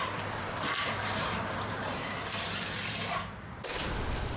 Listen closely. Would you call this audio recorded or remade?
remade